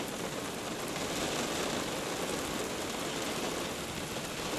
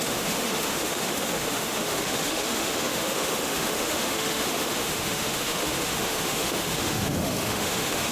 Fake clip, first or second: second